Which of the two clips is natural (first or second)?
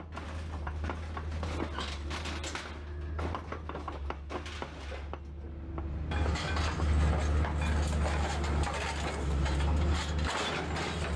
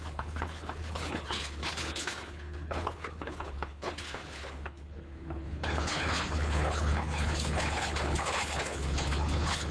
first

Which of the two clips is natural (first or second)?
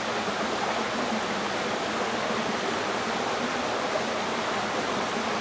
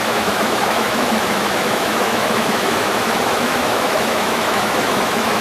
first